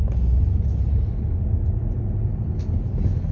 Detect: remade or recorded recorded